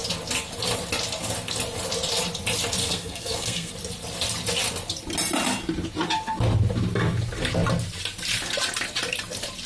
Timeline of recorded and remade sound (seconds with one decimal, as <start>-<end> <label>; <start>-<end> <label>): 0.0-2.8 recorded; 2.8-3.7 remade; 3.7-9.7 recorded